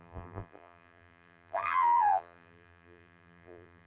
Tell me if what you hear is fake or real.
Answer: fake